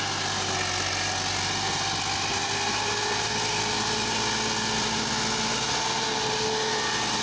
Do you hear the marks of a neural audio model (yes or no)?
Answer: no